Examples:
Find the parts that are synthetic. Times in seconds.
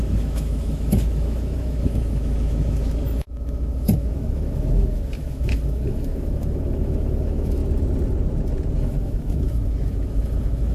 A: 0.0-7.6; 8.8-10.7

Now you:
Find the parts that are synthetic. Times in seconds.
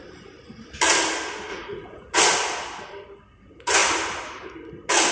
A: 1.5-2.2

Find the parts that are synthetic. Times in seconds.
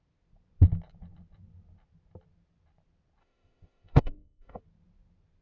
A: 3.2-4.6